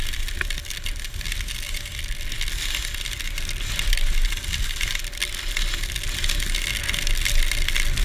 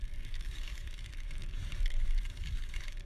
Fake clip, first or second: second